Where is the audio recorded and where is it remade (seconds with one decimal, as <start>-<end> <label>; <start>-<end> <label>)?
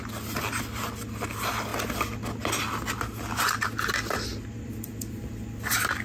0.0-4.3 recorded; 4.3-5.3 remade; 5.3-6.0 recorded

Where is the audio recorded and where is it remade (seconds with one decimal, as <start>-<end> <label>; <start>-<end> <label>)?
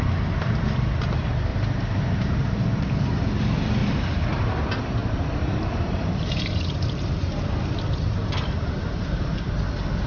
0.0-1.5 recorded; 1.5-3.2 remade; 3.2-3.8 recorded; 3.8-4.5 remade; 4.5-5.0 recorded; 5.0-9.2 remade; 9.2-10.1 recorded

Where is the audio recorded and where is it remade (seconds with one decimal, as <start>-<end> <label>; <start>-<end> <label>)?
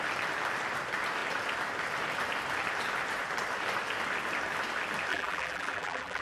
0.0-5.1 recorded; 5.1-6.2 remade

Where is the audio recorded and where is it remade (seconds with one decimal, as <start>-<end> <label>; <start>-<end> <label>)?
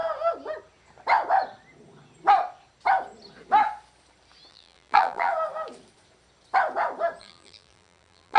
0.0-4.5 recorded; 4.5-5.3 remade; 5.3-7.2 recorded; 7.2-8.4 remade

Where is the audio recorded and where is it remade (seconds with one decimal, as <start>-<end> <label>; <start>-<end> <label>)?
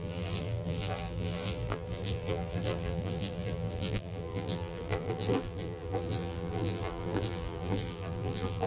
0.0-8.7 remade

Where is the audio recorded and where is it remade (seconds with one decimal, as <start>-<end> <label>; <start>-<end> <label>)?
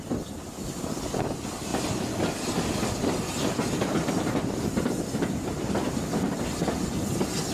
0.0-1.7 recorded; 1.7-6.2 remade; 6.2-7.5 recorded